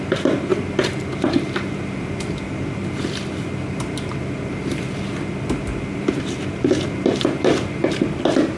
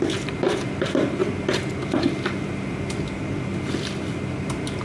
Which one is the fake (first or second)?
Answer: first